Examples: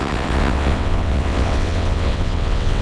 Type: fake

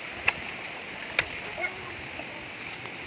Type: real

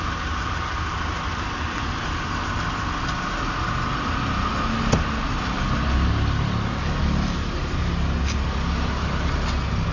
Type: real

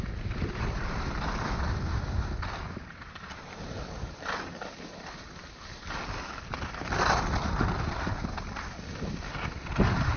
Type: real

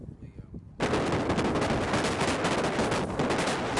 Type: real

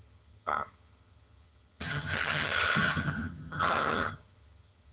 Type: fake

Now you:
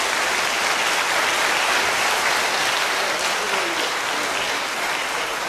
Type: real